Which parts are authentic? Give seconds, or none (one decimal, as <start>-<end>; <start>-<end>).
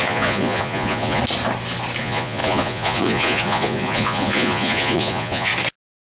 1.2-2.0; 5.5-6.1